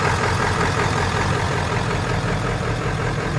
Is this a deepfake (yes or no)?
no